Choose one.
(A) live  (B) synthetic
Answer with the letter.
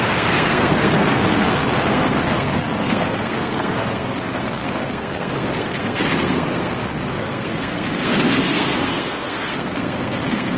B